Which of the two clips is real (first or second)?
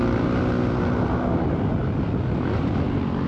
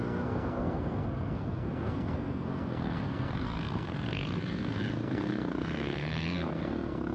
first